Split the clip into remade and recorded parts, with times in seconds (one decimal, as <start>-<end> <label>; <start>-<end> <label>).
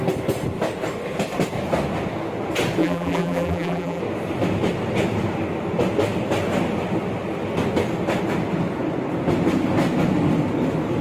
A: 0.0-2.8 recorded; 2.8-4.0 remade; 4.0-11.0 recorded